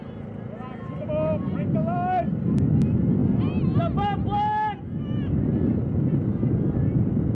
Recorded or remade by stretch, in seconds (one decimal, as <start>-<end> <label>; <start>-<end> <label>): 0.0-7.3 recorded